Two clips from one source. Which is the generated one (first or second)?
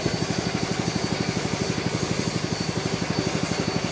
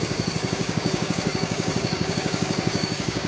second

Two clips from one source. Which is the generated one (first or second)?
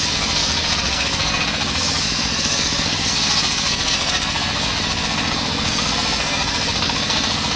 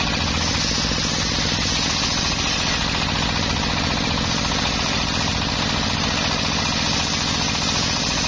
first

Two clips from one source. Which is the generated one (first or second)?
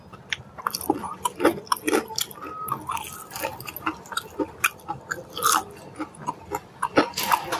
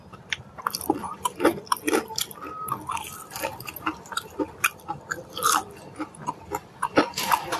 second